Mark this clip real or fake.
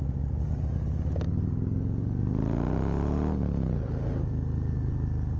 real